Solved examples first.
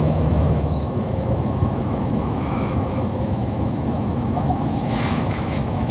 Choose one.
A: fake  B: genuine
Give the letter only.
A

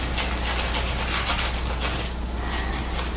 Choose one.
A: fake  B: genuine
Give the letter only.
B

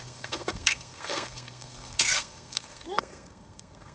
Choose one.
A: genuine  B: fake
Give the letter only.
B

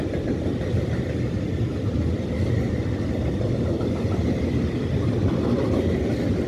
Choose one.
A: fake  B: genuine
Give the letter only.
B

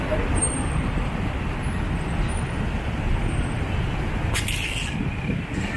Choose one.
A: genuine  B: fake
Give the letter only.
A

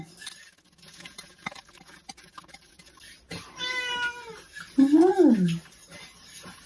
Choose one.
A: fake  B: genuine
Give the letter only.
B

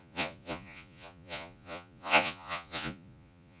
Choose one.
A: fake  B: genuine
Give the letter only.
A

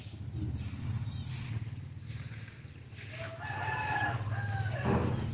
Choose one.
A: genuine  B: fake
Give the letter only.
A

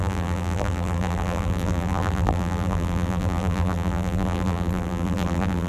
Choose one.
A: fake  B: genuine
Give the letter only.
A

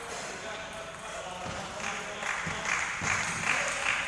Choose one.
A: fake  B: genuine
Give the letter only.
B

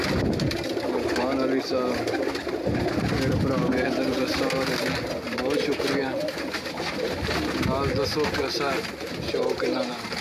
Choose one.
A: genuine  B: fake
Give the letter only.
A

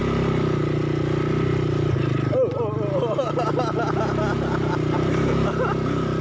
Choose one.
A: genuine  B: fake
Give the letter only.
A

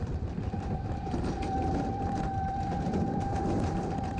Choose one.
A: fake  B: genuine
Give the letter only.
A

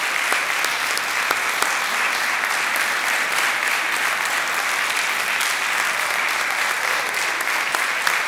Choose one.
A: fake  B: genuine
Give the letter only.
B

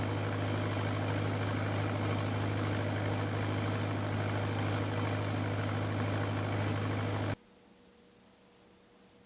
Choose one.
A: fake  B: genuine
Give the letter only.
B